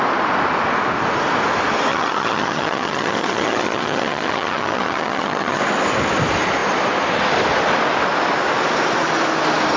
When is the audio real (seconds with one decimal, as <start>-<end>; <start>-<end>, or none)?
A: 0.0-1.9; 5.6-9.8